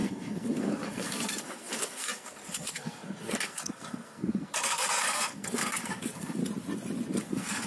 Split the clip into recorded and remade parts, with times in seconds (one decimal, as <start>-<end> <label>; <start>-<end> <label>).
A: 0.0-6.4 remade; 6.4-7.2 recorded; 7.2-7.7 remade